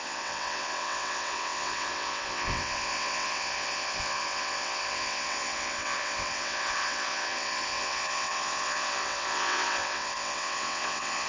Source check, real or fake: fake